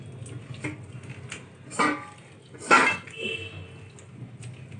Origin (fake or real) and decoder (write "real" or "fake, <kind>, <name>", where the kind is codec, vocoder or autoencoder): real